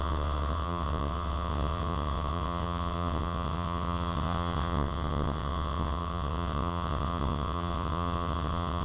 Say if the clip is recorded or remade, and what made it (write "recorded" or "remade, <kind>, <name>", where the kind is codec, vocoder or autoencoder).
remade, vocoder, WaveNeXt